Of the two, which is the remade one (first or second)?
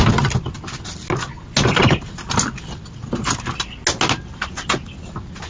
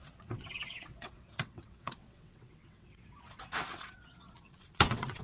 second